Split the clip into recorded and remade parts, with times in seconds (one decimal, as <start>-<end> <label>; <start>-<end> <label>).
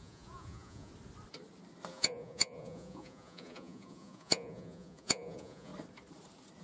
0.0-0.9 remade; 0.9-1.9 recorded; 1.9-5.7 remade; 5.7-6.6 recorded